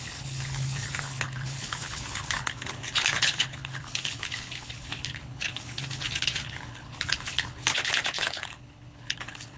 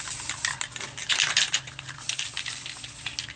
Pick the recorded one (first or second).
second